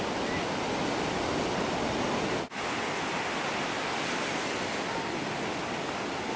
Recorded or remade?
recorded